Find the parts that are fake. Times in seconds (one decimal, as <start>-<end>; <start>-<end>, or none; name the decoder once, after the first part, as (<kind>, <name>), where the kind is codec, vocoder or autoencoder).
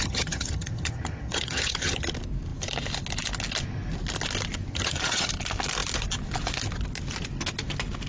0.0-2.1 (vocoder, HiFi-GAN); 4.7-5.3